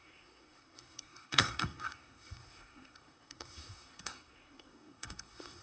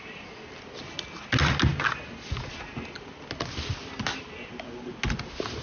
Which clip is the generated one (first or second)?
first